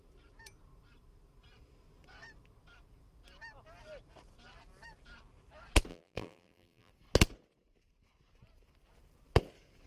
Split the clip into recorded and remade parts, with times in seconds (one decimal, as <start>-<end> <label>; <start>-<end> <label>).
0.0-5.9 recorded; 5.9-6.9 remade; 6.9-9.9 recorded